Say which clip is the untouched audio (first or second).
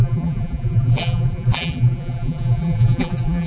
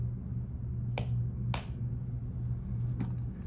second